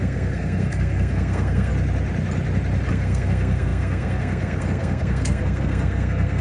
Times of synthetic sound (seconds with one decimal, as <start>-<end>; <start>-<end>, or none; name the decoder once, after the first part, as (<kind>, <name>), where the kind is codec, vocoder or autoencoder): 0.0-1.7 (codec, SNAC); 2.9-6.4